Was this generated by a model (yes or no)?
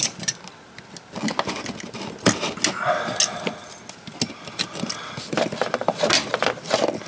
no